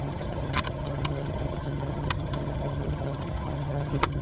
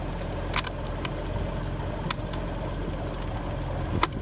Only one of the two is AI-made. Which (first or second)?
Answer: first